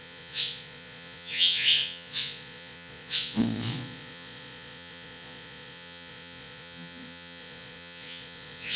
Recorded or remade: remade